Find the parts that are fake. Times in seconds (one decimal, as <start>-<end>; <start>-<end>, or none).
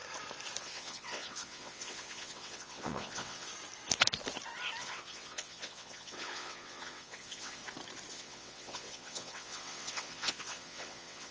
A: 0.6-3.5; 4.8-7.6; 8.1-11.3